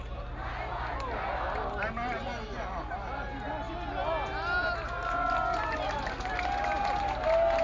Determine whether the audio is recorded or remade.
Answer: recorded